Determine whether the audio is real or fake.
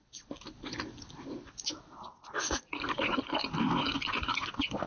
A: real